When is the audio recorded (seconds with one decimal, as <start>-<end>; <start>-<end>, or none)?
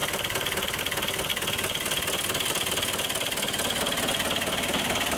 0.0-5.2